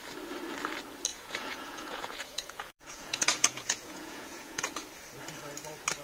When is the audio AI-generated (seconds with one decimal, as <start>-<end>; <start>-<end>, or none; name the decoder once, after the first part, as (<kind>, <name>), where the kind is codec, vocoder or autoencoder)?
1.1-4.7 (vocoder, Vocos)